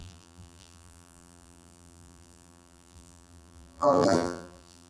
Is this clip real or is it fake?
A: fake